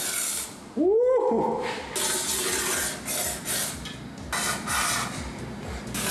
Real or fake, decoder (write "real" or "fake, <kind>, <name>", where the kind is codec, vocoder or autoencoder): real